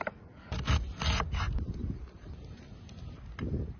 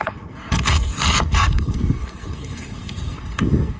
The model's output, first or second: second